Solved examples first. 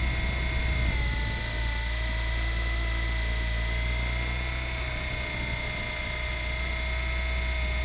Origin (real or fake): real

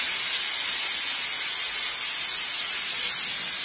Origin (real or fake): real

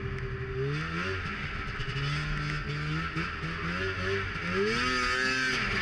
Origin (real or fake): real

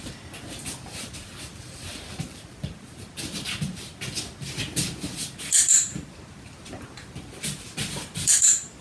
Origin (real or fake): real